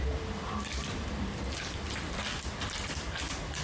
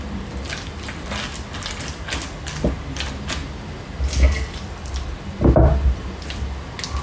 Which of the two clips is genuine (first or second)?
second